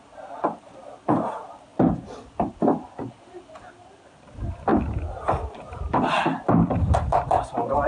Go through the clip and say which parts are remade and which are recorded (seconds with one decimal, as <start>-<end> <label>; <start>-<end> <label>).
0.0-1.7 recorded; 1.7-2.8 remade; 2.8-4.7 recorded; 4.7-5.8 remade; 5.8-7.9 recorded